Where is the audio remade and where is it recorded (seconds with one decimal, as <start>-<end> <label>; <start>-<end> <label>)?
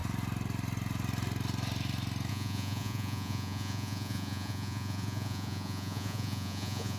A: 0.0-2.3 recorded; 2.3-7.0 remade